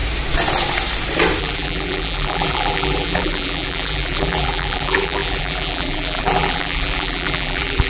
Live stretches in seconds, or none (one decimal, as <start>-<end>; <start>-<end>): 0.0-1.4